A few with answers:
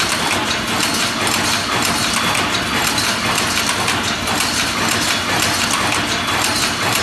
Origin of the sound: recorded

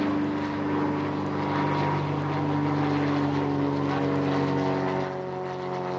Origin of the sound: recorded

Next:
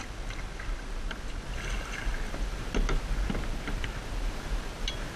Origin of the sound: recorded